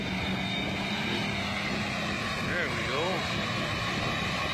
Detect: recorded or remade recorded